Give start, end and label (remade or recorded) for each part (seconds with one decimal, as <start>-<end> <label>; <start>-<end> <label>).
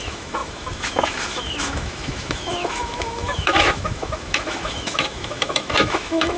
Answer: 0.0-6.4 remade